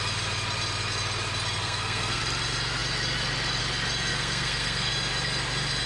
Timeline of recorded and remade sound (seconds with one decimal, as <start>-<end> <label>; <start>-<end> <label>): 0.0-1.6 recorded; 1.6-2.2 remade; 2.2-4.1 recorded; 4.1-4.9 remade; 4.9-5.9 recorded